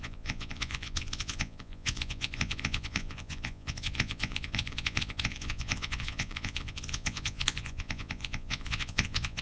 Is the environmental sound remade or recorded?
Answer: remade